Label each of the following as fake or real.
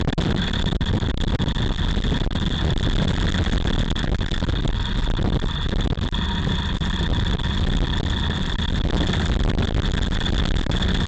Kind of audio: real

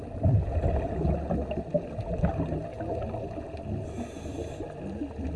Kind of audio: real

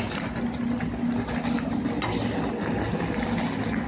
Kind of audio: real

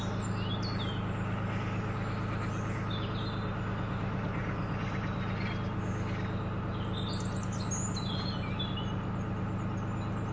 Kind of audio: real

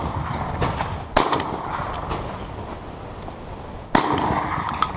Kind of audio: real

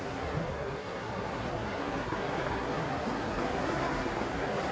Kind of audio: fake